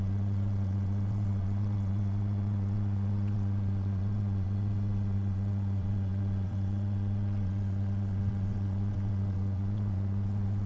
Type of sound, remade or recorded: remade